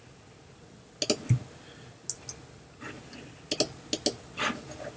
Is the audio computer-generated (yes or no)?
no